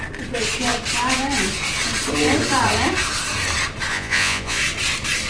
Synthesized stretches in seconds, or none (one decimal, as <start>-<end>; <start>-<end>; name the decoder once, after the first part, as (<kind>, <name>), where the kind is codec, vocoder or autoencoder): 3.9-4.6 (vocoder, Vocos)